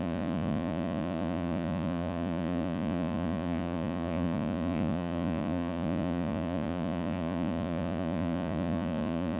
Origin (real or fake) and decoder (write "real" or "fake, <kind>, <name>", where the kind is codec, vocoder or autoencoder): fake, vocoder, Vocos